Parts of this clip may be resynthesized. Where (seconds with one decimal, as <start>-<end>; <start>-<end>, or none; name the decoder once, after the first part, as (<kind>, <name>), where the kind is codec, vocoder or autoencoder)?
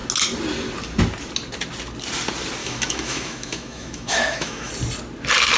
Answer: 2.6-4.7 (autoencoder, DAC-VAE)